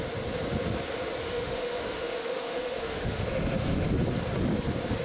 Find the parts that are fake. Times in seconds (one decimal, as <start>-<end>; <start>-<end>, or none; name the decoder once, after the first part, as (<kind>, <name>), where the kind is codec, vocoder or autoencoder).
1.2-3.9 (autoencoder, DAC-VAE)